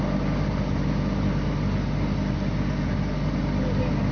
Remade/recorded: recorded